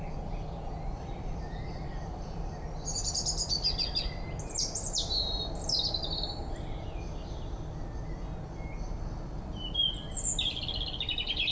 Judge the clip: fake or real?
real